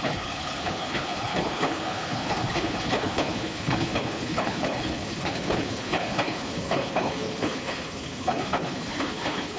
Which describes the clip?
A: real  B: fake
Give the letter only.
B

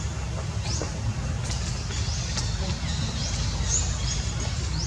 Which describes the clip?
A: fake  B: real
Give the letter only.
B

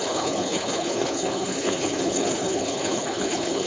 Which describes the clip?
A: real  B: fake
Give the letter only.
B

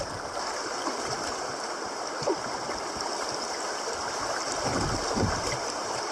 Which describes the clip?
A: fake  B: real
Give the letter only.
B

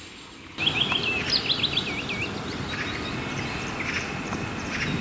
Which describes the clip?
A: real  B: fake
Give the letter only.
A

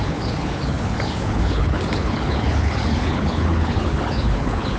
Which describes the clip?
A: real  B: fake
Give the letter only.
B